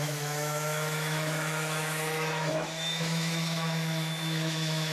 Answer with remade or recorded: remade